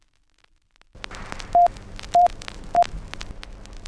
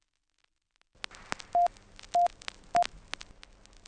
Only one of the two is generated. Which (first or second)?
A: first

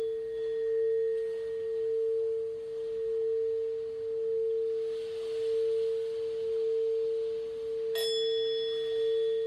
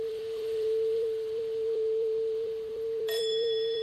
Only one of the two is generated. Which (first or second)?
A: second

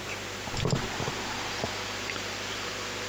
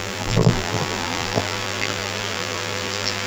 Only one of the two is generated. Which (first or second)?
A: second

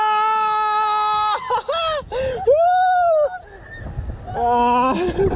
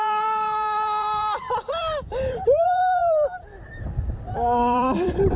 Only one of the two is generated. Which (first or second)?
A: second